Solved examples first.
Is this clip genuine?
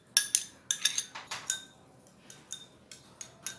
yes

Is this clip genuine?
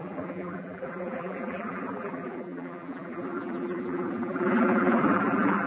no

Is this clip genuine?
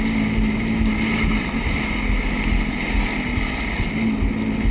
yes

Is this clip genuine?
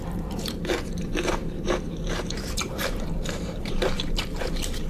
no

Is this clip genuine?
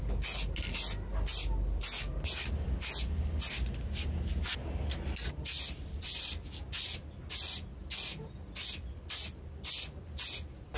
yes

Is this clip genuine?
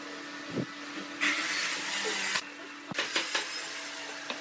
yes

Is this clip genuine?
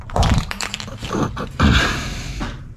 no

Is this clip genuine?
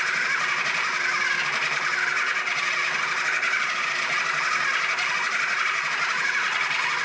yes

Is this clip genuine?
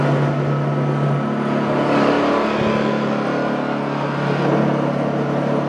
yes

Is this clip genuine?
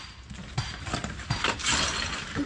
no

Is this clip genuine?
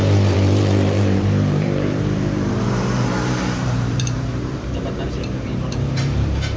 no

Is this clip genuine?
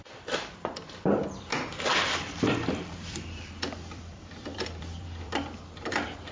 no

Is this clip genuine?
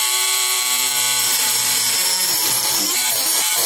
no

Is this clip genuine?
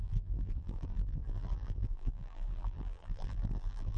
no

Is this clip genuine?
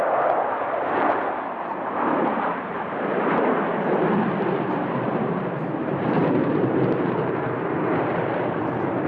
no